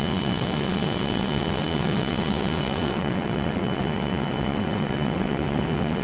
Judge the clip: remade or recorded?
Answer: remade